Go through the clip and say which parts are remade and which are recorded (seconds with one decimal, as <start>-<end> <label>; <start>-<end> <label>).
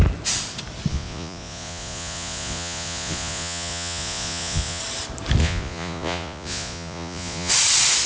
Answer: 0.0-0.9 recorded; 0.9-4.8 remade; 4.8-5.4 recorded; 5.4-7.5 remade; 7.5-8.1 recorded